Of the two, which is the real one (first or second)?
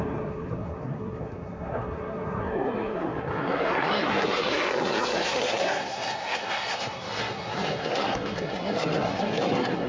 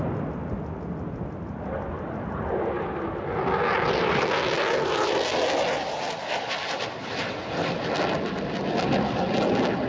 second